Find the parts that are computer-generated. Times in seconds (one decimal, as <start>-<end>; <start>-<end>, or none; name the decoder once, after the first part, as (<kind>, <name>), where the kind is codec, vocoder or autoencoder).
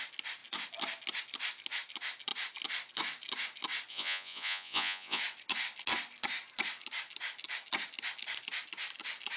3.9-5.2 (vocoder, Vocos)